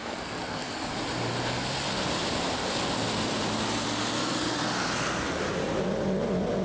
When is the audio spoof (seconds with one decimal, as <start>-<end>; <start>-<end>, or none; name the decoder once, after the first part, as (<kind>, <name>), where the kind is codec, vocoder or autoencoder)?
0.0-0.9 (codec, SNAC); 4.2-5.4